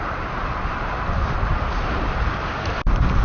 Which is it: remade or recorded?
recorded